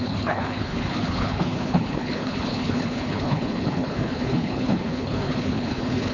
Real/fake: fake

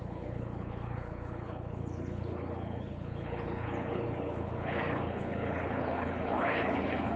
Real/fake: fake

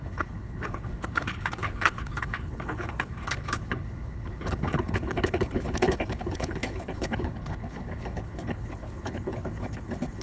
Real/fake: fake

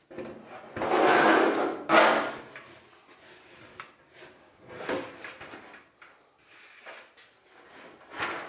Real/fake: real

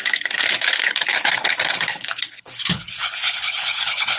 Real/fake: fake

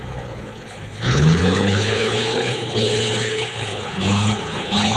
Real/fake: fake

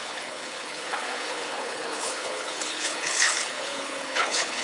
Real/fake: fake